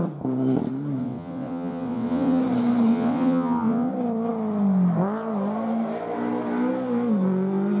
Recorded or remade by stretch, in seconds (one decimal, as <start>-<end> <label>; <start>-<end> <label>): 0.0-1.0 recorded; 1.0-2.4 remade; 2.4-2.9 recorded; 2.9-3.9 remade; 3.9-7.8 recorded